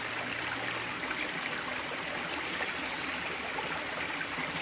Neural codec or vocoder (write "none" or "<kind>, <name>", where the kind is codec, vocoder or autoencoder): none